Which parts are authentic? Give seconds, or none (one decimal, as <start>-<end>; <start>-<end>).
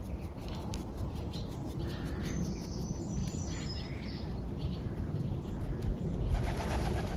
0.0-7.2